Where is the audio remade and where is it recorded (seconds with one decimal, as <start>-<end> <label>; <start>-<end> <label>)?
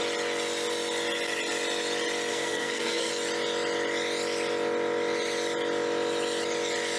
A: 0.0-2.3 recorded; 2.3-3.1 remade; 3.1-7.0 recorded